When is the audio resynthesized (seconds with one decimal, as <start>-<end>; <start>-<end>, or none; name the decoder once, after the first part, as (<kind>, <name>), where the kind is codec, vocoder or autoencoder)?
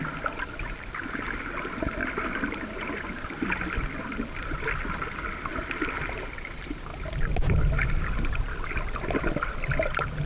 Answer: none